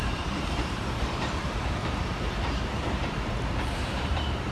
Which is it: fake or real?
fake